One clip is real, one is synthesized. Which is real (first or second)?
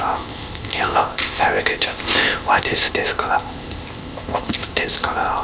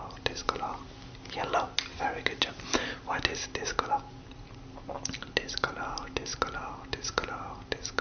second